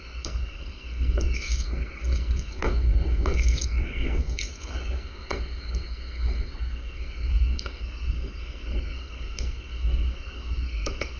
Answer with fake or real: fake